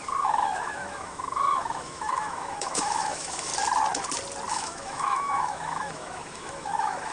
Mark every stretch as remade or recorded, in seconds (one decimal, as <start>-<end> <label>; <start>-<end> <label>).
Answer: 0.0-3.5 remade; 3.5-4.5 recorded; 4.5-7.1 remade